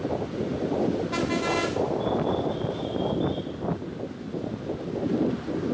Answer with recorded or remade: recorded